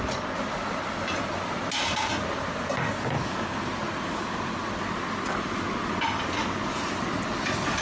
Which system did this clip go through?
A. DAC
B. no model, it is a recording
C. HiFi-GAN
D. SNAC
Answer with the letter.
B